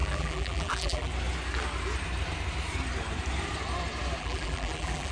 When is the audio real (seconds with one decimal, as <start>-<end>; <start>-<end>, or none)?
1.1-4.2